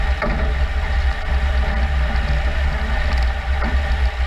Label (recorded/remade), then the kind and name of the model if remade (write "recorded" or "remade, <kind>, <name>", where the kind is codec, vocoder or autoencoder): recorded